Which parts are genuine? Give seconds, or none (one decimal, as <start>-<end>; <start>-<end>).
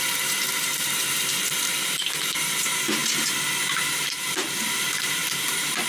3.0-3.9